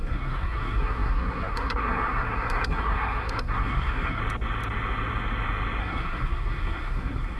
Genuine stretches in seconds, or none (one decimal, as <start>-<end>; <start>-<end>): 4.2-5.8